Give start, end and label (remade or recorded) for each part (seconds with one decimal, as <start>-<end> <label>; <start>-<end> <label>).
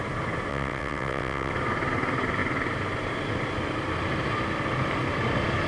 0.0-0.5 recorded; 0.5-1.5 remade; 1.5-5.7 recorded